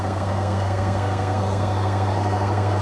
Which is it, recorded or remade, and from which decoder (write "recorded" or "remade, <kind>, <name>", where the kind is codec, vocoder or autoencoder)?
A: remade, codec, SNAC